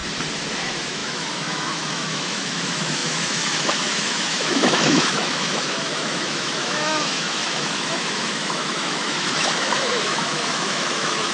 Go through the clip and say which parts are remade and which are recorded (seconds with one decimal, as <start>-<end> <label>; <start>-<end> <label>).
0.0-0.6 recorded; 0.6-11.3 remade